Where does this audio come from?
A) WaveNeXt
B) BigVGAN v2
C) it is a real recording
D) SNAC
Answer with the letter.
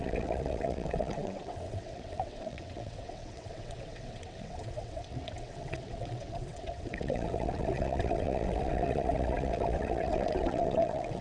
A